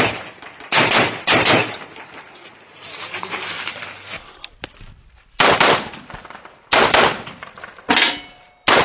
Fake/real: real